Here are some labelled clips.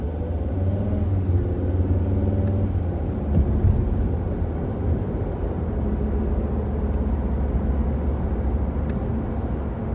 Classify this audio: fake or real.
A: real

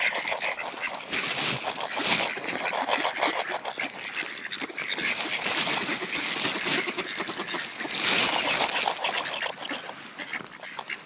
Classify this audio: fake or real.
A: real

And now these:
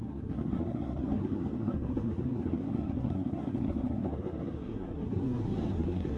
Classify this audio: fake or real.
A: fake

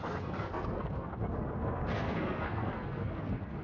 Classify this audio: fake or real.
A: fake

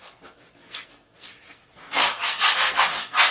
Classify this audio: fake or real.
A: fake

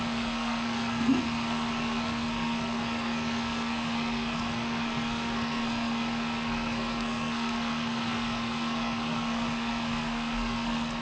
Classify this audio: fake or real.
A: fake